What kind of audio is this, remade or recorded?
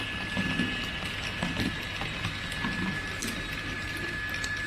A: recorded